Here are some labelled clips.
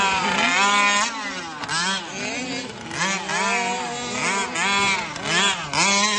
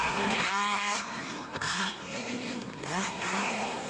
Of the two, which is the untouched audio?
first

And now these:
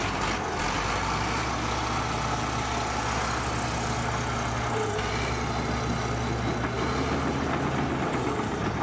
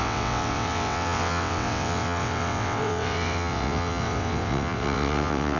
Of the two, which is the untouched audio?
first